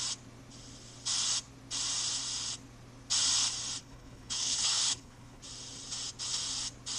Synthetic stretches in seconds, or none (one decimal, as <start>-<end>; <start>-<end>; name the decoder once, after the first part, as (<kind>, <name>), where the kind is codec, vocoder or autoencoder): 3.8-5.4 (codec, HILCodec)